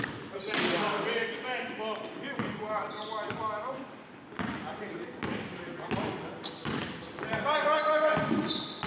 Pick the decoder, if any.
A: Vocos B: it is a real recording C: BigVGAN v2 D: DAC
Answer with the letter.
B